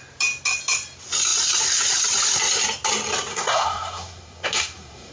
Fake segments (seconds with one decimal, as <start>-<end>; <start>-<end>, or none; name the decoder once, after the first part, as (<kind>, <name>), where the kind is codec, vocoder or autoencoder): 3.3-5.1 (codec, SNAC)